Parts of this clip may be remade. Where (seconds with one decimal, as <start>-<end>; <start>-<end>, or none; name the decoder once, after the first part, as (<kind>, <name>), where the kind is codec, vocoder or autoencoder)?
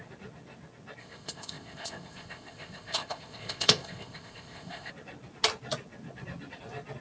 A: 1.0-4.9 (codec, ZipCodec)